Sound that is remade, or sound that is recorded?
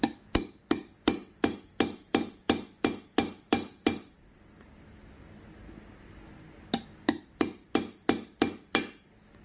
recorded